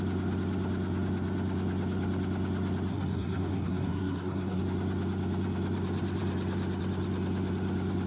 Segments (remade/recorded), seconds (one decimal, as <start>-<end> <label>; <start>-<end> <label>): 0.0-2.9 recorded; 2.9-4.6 remade; 4.6-8.1 recorded